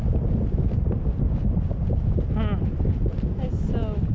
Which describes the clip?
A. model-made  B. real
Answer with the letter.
B